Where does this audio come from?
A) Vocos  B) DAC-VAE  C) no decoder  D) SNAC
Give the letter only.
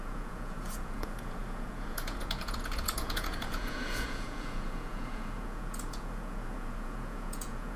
A